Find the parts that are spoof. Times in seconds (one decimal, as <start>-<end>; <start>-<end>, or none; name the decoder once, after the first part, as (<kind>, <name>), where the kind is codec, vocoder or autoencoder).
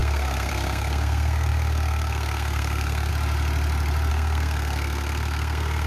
0.0-3.1 (codec, SNAC); 4.1-5.9